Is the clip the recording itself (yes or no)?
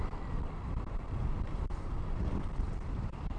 no